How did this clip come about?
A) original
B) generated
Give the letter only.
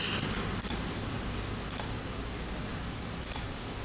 A